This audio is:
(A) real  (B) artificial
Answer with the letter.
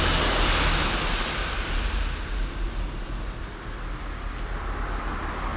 A